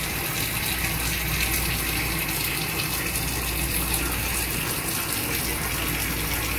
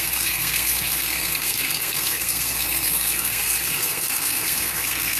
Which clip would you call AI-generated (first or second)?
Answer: second